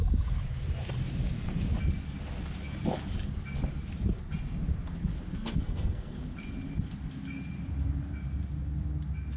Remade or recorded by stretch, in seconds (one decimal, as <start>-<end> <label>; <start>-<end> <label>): 0.0-5.3 recorded; 5.3-6.2 remade; 6.2-9.4 recorded